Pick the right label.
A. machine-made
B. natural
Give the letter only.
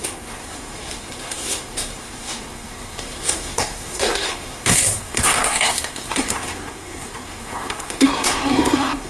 A